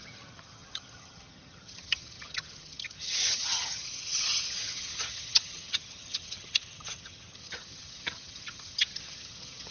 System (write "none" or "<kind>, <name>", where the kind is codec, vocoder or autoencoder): vocoder, HiFi-GAN